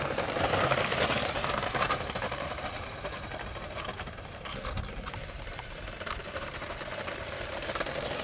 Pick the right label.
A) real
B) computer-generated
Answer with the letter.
B